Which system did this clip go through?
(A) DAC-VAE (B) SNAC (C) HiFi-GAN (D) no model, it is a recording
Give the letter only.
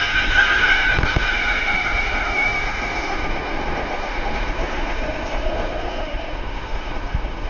A